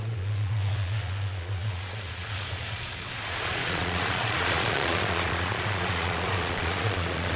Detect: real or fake fake